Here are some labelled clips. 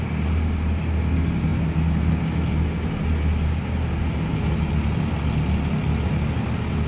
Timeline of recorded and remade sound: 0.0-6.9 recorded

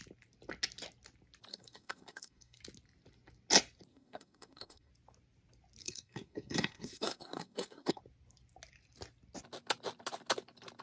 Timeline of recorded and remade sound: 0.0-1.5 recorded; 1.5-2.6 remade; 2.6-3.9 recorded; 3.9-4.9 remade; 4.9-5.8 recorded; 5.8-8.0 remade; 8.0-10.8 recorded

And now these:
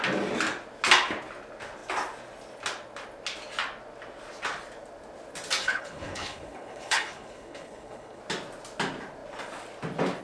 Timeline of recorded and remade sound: 0.0-5.6 recorded; 5.6-8.2 remade; 8.2-10.2 recorded